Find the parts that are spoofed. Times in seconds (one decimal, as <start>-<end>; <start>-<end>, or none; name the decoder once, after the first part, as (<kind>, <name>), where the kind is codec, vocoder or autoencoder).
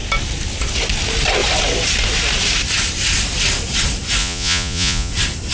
4.2-5.1 (vocoder, Vocos)